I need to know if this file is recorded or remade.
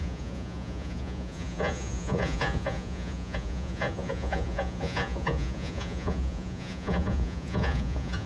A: remade